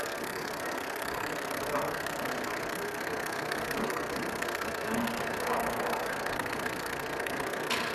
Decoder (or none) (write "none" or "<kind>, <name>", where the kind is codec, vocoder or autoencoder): codec, SNAC